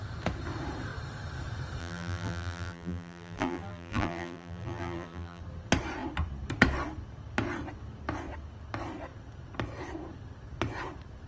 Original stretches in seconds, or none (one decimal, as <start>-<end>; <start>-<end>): 0.0-1.8; 5.4-11.3